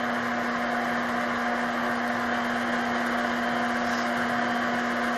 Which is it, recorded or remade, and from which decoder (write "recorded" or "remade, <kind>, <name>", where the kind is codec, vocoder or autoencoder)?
recorded